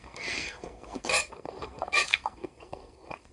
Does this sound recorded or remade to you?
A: remade